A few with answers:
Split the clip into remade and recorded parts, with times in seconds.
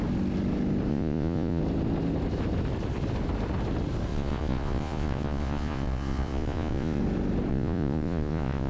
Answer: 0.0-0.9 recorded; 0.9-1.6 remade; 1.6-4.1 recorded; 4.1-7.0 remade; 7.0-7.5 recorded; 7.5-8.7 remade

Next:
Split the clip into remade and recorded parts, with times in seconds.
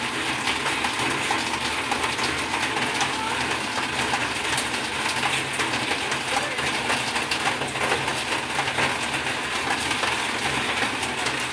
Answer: 0.0-11.5 recorded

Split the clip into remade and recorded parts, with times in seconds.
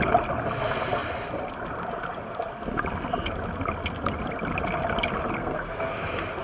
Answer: 0.0-5.4 recorded; 5.4-5.9 remade; 5.9-6.4 recorded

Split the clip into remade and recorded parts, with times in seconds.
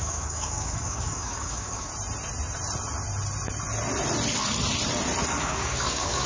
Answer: 0.0-1.9 remade; 1.9-5.4 recorded; 5.4-6.3 remade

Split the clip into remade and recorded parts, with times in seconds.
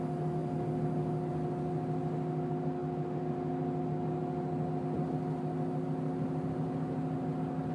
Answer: 0.0-7.7 recorded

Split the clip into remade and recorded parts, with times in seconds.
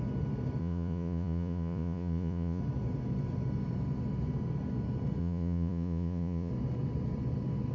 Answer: 0.0-0.6 recorded; 0.6-2.6 remade; 2.6-5.2 recorded; 5.2-6.5 remade; 6.5-7.7 recorded